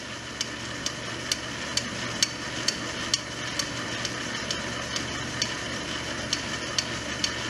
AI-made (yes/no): no